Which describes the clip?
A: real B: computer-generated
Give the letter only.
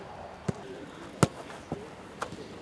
A